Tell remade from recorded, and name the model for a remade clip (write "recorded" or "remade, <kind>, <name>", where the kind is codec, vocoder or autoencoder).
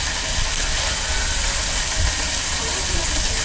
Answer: recorded